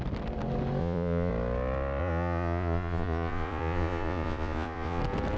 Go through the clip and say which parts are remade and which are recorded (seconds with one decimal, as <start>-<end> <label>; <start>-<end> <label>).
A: 0.0-0.8 recorded; 0.8-1.3 remade; 1.3-2.0 recorded; 2.0-5.0 remade; 5.0-5.4 recorded